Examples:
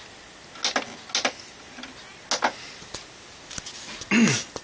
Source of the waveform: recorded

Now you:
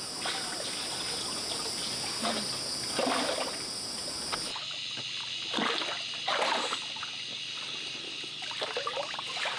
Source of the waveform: recorded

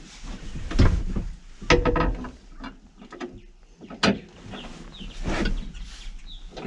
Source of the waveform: recorded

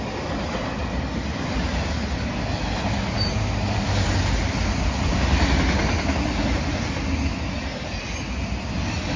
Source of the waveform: recorded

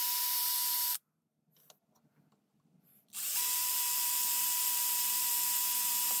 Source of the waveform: remade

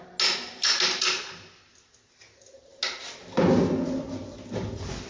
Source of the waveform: recorded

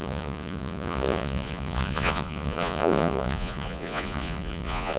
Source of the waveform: remade